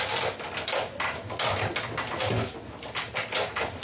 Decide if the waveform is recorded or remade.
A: recorded